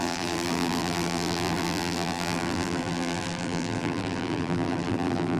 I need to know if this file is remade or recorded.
remade